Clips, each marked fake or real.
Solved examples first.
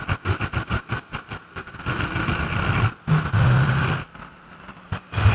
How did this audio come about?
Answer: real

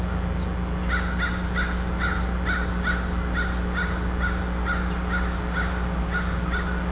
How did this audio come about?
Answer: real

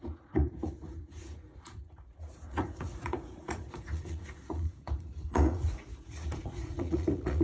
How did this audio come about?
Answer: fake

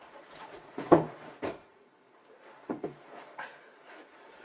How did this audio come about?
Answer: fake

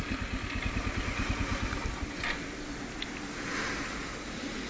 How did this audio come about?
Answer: real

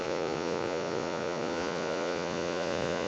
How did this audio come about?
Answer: fake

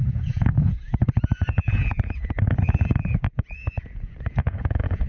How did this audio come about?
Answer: fake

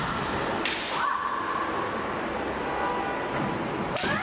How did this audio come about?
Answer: real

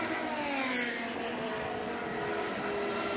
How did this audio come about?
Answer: real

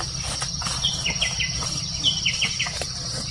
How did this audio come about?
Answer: real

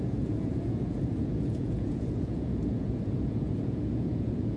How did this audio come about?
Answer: fake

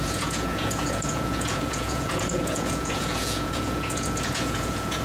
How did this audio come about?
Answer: fake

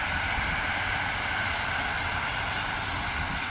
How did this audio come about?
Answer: real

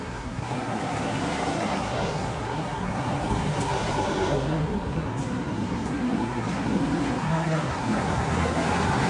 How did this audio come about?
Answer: fake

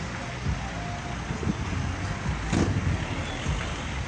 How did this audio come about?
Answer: real